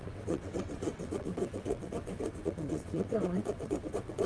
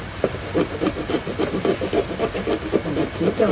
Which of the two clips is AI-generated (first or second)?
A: first